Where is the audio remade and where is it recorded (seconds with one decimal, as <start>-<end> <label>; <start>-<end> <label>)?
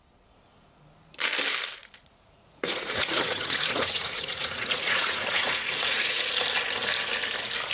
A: 0.0-1.8 recorded; 1.8-6.2 remade; 6.2-7.7 recorded